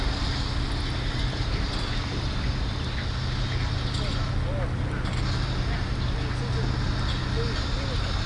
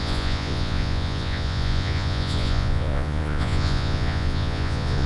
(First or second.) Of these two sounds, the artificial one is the second